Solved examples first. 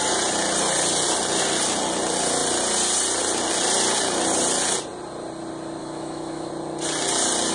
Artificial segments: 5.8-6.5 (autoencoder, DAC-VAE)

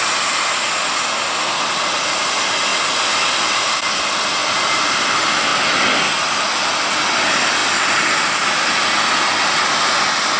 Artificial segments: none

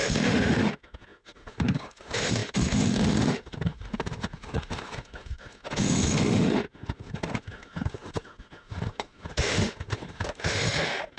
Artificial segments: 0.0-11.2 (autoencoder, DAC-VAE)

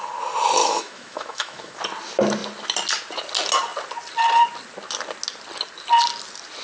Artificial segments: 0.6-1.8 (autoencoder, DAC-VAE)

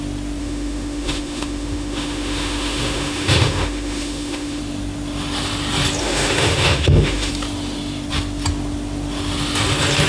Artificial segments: 0.4-4.6 (autoencoder, DAC-VAE); 6.0-7.3

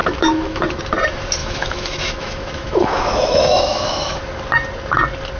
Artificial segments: 0.0-0.8 (autoencoder, DAC-VAE); 1.4-4.2

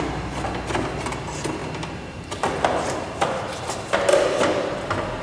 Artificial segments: none

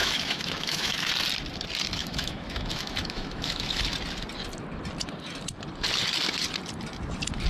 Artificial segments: 0.0-1.1 (autoencoder, DAC-VAE); 2.0-3.8